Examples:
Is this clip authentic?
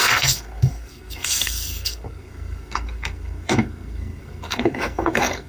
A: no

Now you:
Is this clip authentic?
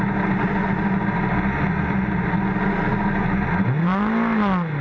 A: yes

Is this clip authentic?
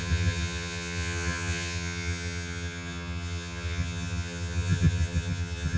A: no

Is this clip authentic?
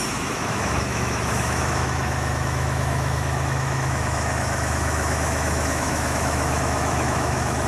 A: no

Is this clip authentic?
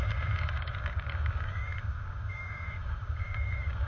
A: no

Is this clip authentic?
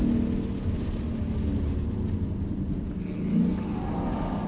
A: yes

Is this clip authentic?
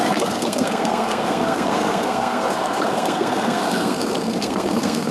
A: no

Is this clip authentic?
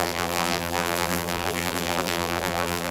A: no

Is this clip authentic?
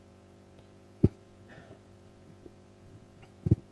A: no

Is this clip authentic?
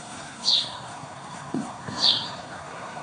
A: no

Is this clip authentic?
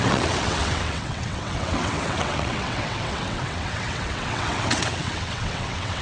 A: no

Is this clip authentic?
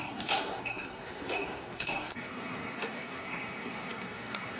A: no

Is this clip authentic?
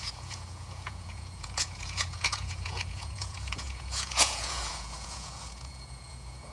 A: no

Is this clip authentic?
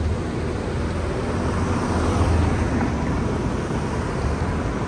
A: yes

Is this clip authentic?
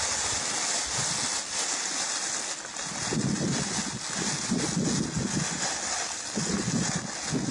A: yes